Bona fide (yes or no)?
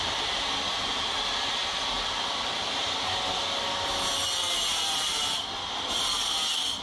yes